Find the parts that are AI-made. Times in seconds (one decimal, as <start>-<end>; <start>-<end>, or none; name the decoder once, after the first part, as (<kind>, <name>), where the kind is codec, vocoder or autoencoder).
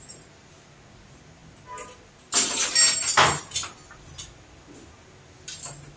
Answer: none